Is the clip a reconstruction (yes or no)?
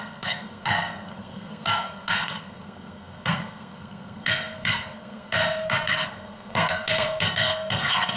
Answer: yes